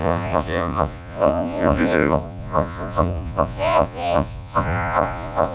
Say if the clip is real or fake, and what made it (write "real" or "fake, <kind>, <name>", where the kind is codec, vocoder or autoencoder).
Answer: fake, vocoder, Vocos